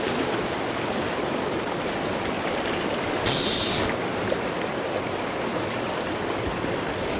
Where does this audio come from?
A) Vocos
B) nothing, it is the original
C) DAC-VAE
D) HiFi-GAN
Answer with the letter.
B